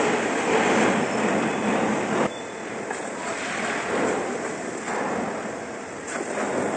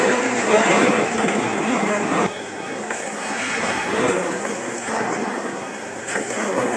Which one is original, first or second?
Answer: first